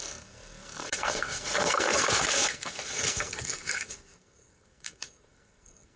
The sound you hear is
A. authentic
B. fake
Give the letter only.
B